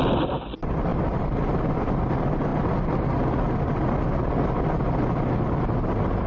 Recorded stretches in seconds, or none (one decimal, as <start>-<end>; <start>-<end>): 0.0-6.3